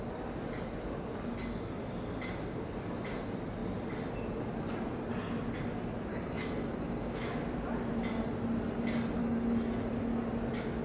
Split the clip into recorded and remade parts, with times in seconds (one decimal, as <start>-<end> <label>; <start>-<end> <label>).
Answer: 0.0-6.1 recorded; 6.1-7.3 remade; 7.3-9.2 recorded; 9.2-9.9 remade; 9.9-10.8 recorded